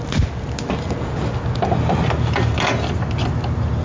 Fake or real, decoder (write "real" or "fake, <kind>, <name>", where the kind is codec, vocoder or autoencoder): real